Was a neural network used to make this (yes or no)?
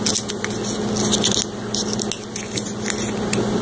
no